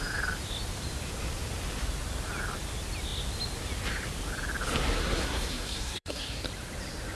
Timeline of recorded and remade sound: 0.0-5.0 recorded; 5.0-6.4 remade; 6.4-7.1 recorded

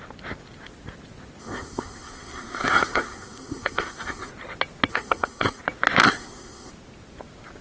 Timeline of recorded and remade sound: 0.0-1.4 recorded; 1.4-4.3 remade; 4.3-4.9 recorded; 4.9-5.6 remade; 5.6-6.0 recorded; 6.0-6.7 remade; 6.7-7.6 recorded

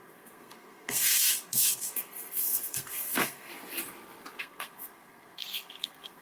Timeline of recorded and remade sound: 0.0-3.5 remade; 3.5-4.4 recorded; 4.4-6.2 remade

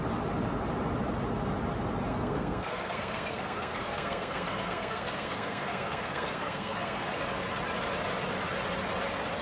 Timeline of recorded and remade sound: 0.0-2.1 recorded; 2.1-7.2 remade; 7.2-9.4 recorded